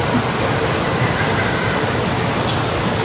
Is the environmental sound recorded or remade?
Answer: recorded